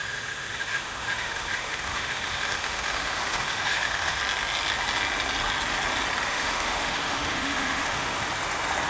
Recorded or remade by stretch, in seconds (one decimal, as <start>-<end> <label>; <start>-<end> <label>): 0.0-4.2 remade; 4.2-6.3 recorded; 6.3-8.3 remade; 8.3-8.9 recorded